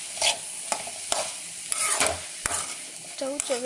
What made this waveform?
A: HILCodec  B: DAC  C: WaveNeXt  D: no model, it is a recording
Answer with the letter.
D